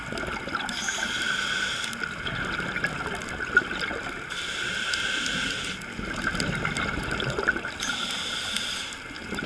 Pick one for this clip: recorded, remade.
recorded